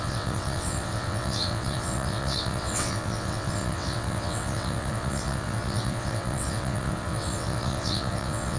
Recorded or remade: remade